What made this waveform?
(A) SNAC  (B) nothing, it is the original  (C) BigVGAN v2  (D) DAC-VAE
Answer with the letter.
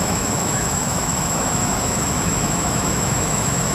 D